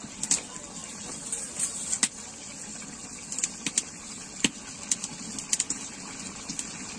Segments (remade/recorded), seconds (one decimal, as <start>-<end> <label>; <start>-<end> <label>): 0.0-7.0 recorded